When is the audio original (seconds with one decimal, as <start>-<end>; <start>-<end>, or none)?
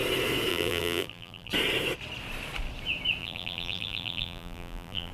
0.0-0.5; 1.5-3.2